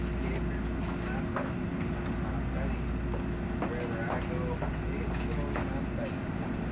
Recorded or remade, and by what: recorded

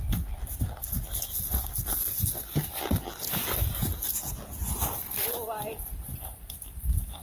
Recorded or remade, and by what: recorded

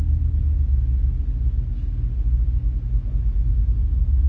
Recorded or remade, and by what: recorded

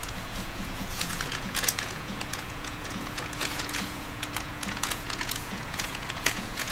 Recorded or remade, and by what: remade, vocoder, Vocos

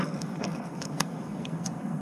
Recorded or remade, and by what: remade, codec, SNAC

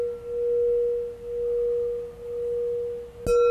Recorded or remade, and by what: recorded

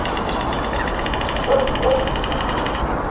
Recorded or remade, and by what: recorded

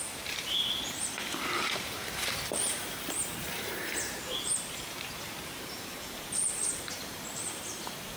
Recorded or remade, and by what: remade, vocoder, BigVGAN v2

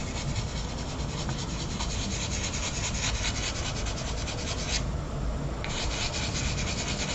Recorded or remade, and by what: recorded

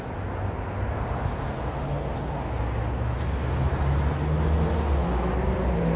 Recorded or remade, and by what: recorded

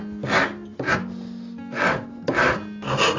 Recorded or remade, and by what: recorded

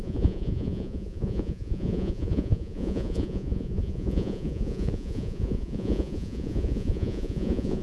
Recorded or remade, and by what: remade, vocoder, Vocos